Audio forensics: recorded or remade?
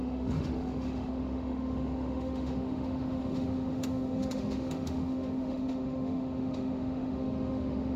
remade